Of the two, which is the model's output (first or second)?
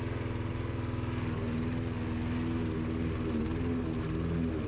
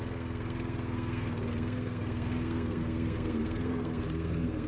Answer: second